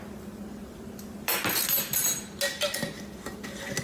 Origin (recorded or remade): recorded